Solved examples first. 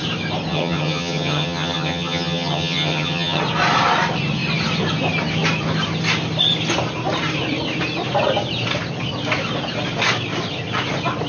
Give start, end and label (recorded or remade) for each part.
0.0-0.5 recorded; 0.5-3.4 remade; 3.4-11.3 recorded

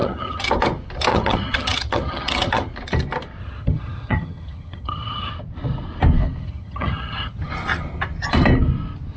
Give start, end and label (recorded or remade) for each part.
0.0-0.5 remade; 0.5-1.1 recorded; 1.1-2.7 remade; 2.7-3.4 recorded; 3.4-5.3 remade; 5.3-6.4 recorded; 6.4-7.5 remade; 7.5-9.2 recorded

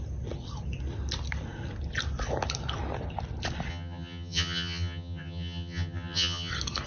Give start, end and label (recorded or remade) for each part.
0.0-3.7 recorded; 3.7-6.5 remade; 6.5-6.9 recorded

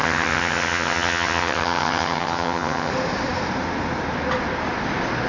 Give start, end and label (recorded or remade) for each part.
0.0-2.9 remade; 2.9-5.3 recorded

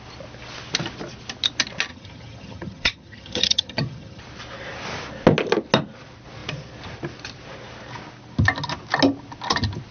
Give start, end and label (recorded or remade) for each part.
0.0-1.9 recorded; 1.9-4.2 remade; 4.2-9.9 recorded

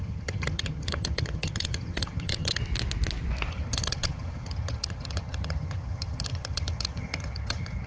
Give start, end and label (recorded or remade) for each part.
0.0-2.6 remade; 2.6-3.5 recorded; 3.5-7.9 remade